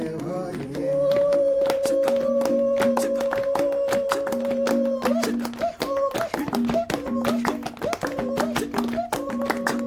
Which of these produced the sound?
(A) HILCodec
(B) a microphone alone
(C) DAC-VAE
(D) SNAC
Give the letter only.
B